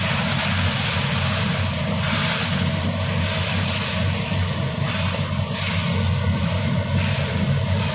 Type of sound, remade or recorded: recorded